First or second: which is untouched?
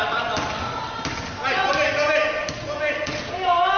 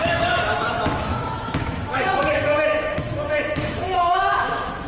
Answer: first